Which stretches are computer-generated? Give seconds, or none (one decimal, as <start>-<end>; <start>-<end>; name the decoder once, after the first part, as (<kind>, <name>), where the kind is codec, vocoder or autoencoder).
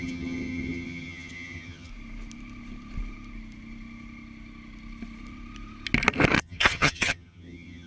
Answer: 0.0-1.9 (vocoder, HiFi-GAN); 6.4-7.9